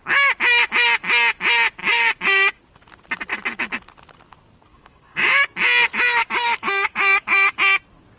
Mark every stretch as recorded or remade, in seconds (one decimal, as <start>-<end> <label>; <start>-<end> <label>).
0.0-1.8 recorded; 1.8-2.6 remade; 2.6-4.7 recorded; 4.7-5.3 remade; 5.3-6.2 recorded; 6.2-7.6 remade; 7.6-8.2 recorded